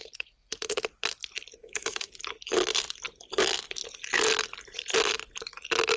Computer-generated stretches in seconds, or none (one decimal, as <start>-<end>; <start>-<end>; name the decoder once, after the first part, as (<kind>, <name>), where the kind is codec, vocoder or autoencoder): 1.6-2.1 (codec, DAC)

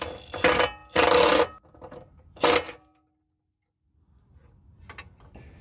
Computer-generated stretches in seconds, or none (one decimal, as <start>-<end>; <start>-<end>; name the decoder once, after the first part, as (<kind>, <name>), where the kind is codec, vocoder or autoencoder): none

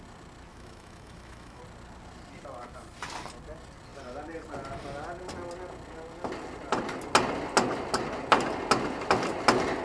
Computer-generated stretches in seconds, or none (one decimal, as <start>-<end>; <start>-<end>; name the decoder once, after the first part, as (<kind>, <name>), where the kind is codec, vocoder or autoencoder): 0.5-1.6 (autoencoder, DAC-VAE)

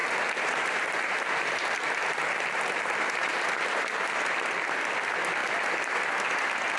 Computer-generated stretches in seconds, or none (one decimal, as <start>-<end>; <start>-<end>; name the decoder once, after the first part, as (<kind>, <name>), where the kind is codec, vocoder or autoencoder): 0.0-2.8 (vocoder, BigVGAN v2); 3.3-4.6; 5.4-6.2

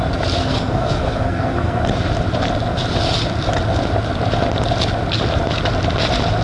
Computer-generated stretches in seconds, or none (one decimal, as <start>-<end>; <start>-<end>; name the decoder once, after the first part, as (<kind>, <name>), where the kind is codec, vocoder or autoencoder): 0.4-1.8 (codec, SNAC)

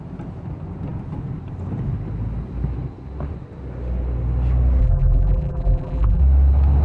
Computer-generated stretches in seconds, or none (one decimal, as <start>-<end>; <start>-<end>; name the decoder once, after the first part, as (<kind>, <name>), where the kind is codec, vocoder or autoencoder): 4.8-6.2 (vocoder, BigVGAN v2)